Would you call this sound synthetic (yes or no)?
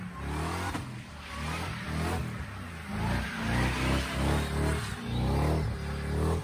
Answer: no